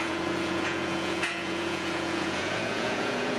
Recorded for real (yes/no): no